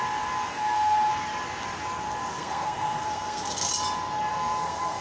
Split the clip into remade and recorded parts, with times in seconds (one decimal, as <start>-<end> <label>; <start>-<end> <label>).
0.0-0.5 recorded; 0.5-1.1 remade; 1.1-2.4 recorded; 2.4-3.7 remade; 3.7-4.3 recorded; 4.3-5.0 remade